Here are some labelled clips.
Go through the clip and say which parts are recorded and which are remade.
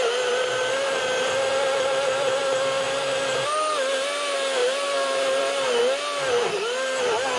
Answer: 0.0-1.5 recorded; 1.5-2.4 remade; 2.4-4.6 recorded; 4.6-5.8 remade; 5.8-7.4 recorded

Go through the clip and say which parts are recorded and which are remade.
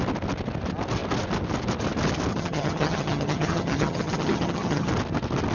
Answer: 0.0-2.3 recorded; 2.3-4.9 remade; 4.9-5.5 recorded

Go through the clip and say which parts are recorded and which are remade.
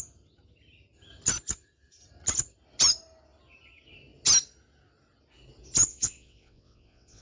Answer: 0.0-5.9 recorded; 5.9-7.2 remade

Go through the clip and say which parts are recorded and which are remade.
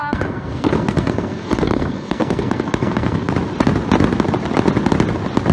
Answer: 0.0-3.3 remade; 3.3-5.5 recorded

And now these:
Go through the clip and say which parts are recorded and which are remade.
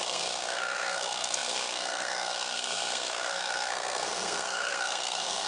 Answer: 0.0-5.5 remade